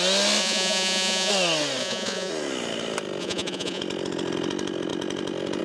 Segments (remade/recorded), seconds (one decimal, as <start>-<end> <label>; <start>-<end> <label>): 0.0-0.4 recorded; 0.4-1.3 remade; 1.3-1.8 recorded; 1.8-2.3 remade; 2.3-3.2 recorded; 3.2-3.8 remade; 3.8-5.6 recorded